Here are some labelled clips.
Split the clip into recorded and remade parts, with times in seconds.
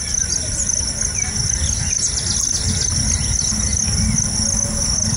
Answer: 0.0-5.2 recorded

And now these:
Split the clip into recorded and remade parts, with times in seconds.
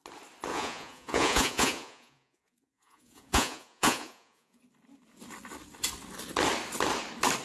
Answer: 0.0-0.5 recorded; 0.5-4.6 remade; 4.6-7.4 recorded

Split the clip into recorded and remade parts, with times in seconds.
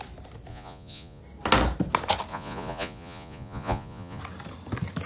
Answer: 0.0-0.5 recorded; 0.5-1.2 remade; 1.2-2.3 recorded; 2.3-4.2 remade; 4.2-5.1 recorded